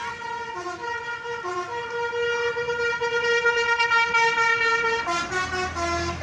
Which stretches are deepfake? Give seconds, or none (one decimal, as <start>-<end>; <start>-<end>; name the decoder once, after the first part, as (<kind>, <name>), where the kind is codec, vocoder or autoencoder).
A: none